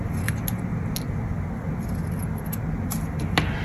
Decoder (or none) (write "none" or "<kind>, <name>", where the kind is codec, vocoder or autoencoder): none